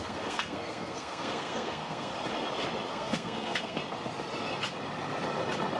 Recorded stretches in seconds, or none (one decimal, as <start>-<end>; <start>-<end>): 2.1-2.9; 3.8-5.8